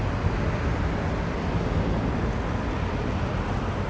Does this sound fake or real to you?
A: real